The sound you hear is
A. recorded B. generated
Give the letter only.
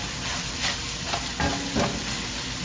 A